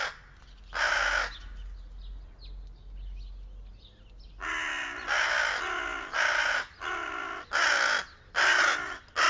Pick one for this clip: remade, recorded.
recorded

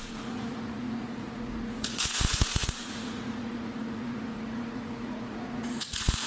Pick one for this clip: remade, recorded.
remade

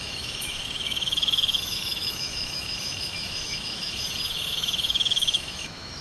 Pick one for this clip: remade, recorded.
remade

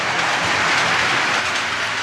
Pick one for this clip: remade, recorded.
recorded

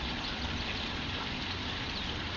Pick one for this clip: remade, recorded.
recorded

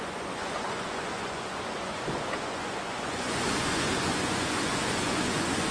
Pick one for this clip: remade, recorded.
remade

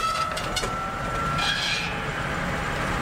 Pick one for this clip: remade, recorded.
recorded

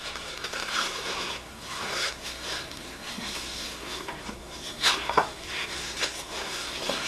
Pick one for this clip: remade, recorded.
remade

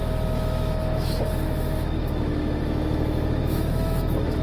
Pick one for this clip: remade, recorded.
remade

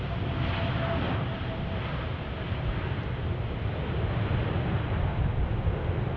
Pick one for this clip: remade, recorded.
recorded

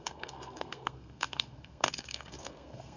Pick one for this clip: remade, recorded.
remade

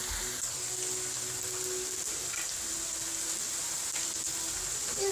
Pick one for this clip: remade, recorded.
recorded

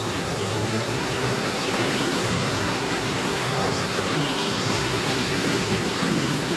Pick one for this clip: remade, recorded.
remade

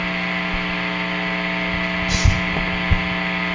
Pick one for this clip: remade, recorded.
recorded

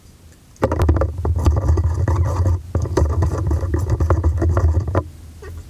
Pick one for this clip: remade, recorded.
recorded